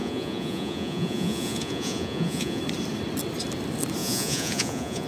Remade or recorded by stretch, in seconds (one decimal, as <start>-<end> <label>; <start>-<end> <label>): 0.0-2.6 remade; 2.6-4.0 recorded; 4.0-5.1 remade